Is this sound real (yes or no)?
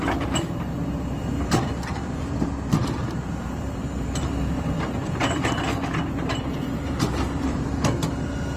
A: no